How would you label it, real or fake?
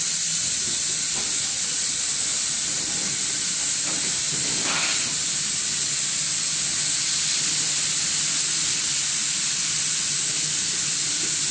real